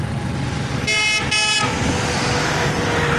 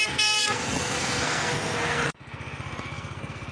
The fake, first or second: second